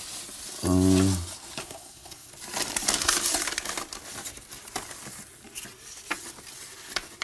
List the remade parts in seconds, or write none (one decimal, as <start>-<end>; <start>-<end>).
1.6-2.3